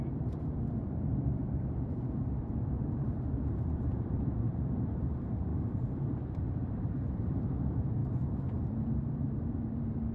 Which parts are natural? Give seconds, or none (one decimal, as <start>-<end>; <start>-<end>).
1.1-1.9